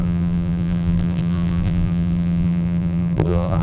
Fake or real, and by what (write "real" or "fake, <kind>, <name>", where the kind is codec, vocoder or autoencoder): fake, vocoder, BigVGAN v2